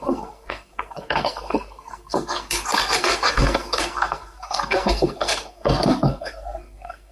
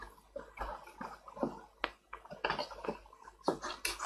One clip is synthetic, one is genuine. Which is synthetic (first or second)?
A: first